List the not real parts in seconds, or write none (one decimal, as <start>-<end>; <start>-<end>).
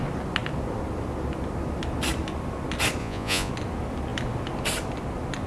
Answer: 3.0-3.5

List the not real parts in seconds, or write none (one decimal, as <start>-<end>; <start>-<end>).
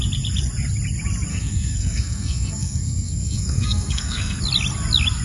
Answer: 1.3-4.4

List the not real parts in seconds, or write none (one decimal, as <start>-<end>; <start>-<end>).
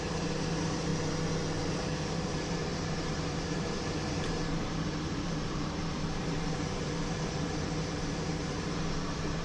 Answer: 0.0-0.9; 1.7-9.4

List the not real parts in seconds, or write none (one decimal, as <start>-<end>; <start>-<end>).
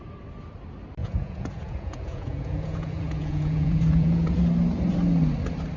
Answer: 1.0-4.4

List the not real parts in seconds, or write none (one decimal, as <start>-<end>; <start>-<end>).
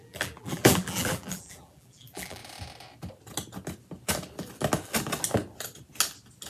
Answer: 0.0-2.4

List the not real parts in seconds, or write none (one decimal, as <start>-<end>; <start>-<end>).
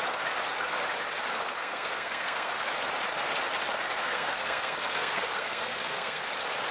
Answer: 1.6-2.5; 4.0-6.2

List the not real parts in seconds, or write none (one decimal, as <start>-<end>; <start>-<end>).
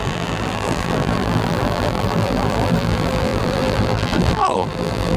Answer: 0.0-5.2